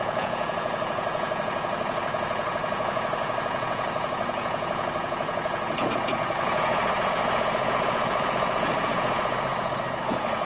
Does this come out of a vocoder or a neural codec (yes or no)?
yes